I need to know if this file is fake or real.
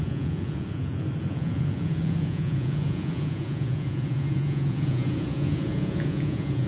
fake